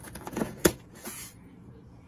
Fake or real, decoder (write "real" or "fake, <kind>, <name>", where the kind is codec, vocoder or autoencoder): fake, vocoder, Vocos